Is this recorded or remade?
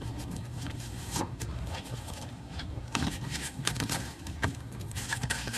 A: remade